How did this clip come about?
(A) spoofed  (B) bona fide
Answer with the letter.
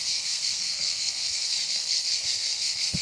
A